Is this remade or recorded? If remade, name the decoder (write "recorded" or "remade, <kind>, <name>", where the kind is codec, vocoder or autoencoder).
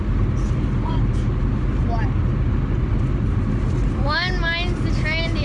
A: recorded